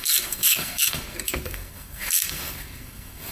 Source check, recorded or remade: remade